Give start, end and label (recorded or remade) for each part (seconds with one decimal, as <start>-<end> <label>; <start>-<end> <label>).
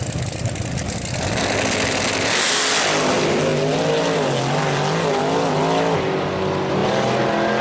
0.0-7.6 recorded